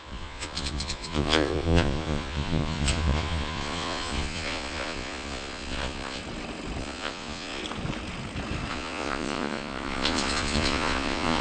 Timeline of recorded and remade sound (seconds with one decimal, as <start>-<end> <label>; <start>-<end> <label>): 0.0-6.2 remade; 6.2-6.8 recorded; 6.8-7.6 remade; 7.6-8.7 recorded; 8.7-11.4 remade